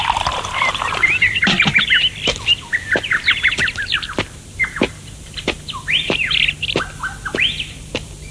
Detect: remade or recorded remade